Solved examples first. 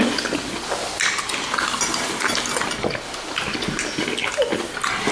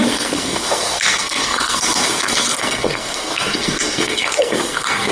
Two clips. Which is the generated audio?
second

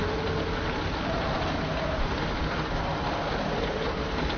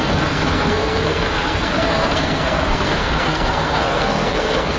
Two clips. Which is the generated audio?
second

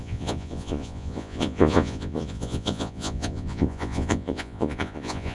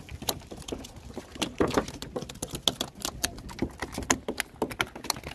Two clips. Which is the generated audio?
first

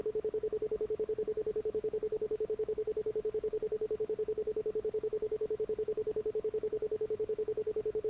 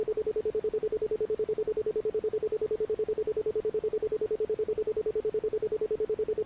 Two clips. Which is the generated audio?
first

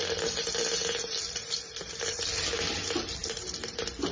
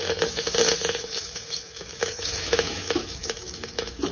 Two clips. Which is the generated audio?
second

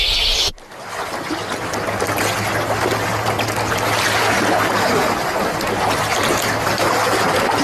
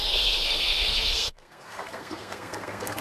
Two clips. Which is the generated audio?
second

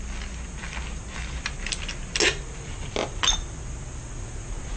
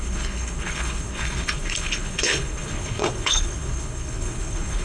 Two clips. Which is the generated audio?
second